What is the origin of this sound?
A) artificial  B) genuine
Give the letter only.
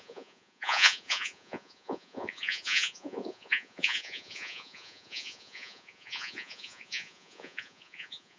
A